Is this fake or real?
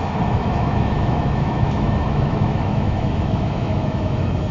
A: fake